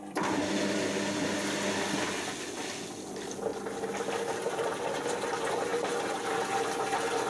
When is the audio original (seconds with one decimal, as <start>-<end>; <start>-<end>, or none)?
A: 0.0-7.3